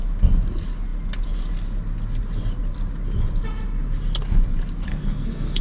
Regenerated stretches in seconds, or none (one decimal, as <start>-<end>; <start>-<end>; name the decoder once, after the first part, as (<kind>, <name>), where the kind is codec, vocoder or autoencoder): 4.9-5.6 (codec, SNAC)